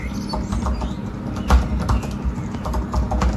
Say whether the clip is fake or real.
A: real